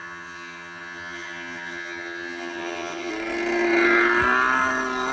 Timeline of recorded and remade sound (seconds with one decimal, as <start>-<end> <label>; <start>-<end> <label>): 0.0-3.1 remade; 3.1-5.1 recorded